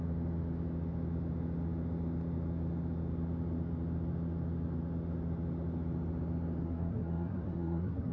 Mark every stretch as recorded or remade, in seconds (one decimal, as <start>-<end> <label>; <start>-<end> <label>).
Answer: 0.0-6.6 recorded; 6.6-8.1 remade